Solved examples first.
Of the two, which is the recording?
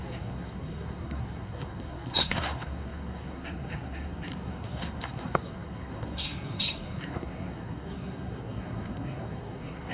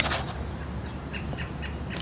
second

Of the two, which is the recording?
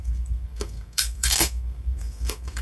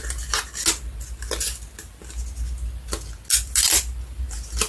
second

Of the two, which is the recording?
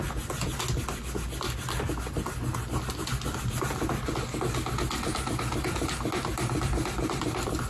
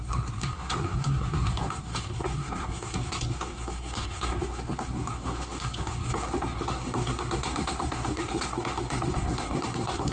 first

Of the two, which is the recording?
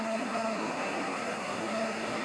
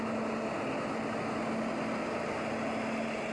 second